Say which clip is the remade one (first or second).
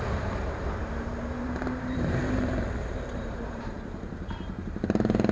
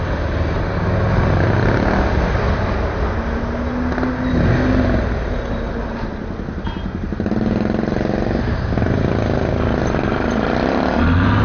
first